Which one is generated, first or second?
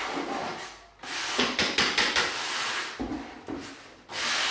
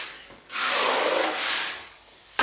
second